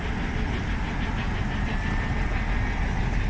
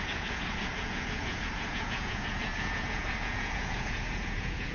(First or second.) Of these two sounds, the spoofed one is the second